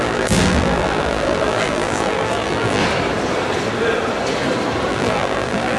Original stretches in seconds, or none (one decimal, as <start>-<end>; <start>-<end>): 2.8-4.9